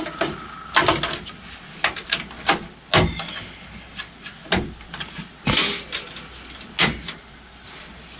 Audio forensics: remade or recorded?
recorded